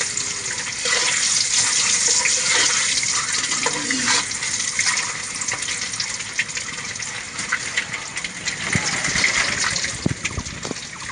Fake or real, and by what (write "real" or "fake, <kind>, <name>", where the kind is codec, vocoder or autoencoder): real